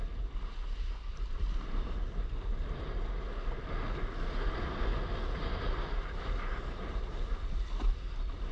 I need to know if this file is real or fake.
real